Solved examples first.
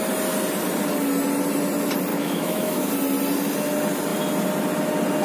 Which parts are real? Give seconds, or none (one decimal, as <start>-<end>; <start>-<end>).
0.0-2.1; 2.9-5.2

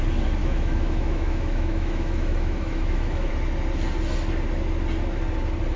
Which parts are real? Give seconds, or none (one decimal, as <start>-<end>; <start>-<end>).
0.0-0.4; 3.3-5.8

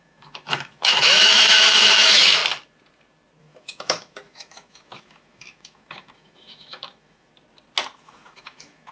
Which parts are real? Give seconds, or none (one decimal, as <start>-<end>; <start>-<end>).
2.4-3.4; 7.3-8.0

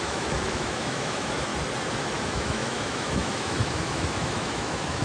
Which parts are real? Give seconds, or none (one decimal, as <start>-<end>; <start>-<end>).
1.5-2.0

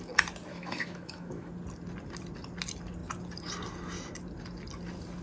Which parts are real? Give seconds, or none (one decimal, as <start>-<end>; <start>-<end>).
0.0-0.5; 1.5-5.2

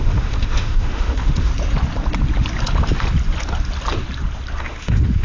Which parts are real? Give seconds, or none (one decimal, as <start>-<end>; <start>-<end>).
1.5-4.6

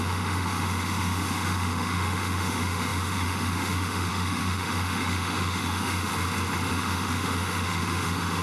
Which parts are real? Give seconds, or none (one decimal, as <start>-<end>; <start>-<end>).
6.1-6.7